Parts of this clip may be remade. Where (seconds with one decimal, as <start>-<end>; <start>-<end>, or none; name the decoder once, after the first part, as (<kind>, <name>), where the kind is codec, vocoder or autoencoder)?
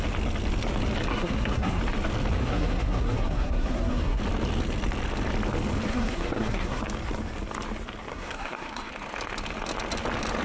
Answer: 1.1-1.8 (codec, SNAC); 2.4-4.2; 5.9-6.8; 8.1-8.9